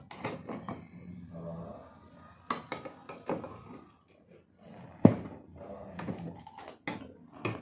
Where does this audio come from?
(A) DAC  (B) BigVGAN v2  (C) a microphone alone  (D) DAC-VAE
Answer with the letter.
C